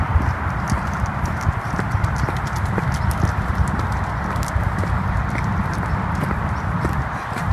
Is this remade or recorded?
remade